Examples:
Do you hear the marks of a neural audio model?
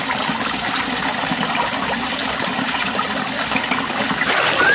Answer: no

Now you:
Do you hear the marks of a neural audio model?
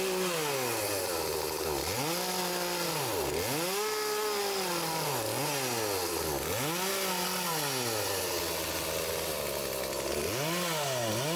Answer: no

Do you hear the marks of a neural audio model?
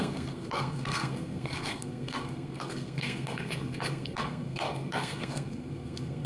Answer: yes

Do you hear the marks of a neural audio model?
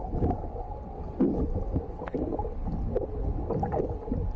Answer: no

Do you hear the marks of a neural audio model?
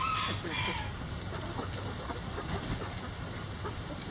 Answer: no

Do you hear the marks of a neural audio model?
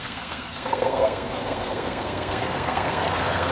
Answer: yes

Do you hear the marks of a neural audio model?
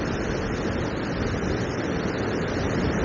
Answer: no